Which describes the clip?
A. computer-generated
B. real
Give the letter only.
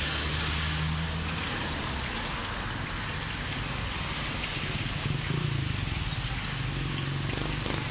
B